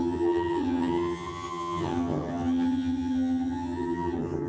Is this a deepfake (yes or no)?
yes